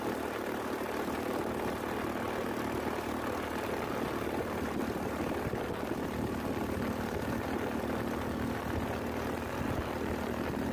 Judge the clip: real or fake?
real